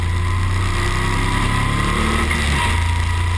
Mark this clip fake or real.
real